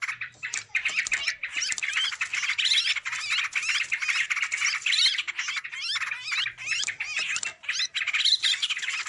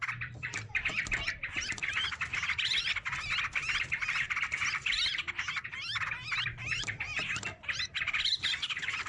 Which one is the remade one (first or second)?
second